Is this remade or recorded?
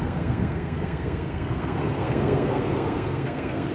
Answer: remade